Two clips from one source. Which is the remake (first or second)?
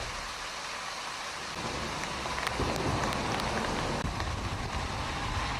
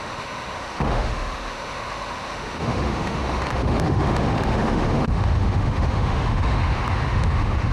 second